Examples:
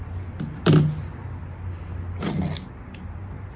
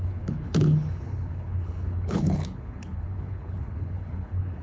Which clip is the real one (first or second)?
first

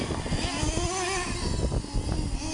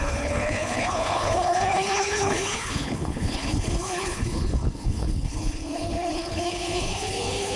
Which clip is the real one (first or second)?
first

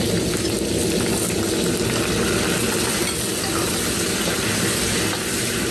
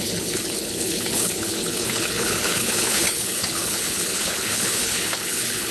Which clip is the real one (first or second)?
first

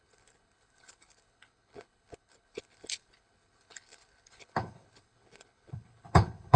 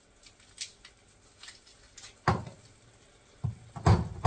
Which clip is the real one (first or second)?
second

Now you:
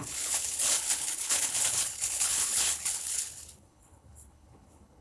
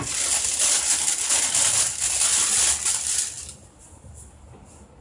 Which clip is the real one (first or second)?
second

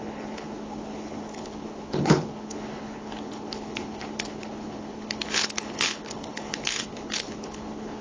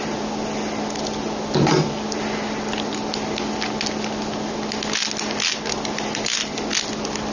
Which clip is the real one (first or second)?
second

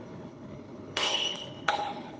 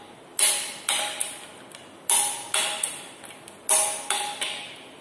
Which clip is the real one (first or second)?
second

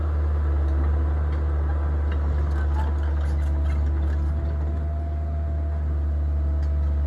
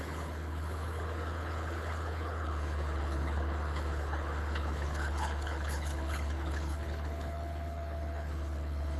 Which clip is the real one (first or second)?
first